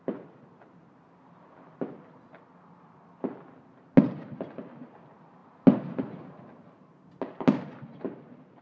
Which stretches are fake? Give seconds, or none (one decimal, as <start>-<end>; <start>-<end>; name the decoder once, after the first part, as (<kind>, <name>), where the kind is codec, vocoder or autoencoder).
none